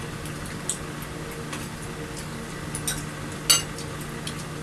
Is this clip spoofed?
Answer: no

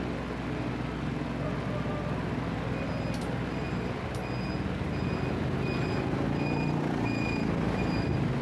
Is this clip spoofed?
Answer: no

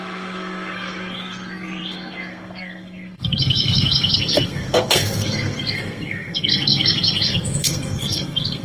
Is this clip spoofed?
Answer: yes